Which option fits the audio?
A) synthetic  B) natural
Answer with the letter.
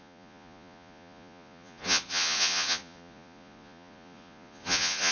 A